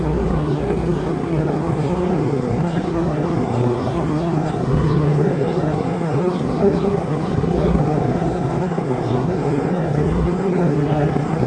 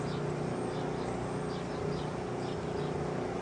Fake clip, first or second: first